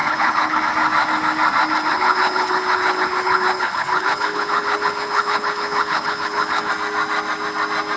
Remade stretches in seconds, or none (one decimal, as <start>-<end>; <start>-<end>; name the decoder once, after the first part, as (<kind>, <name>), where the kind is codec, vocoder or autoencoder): 0.0-0.6 (codec, HILCodec); 1.9-6.7